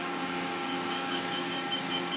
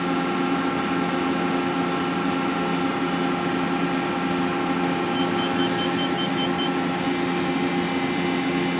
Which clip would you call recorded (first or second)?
second